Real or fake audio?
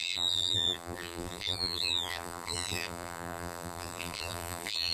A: fake